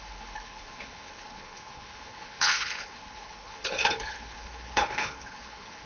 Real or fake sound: fake